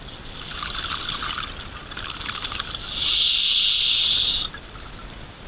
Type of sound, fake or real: real